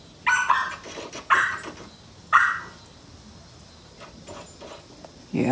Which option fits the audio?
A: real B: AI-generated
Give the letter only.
A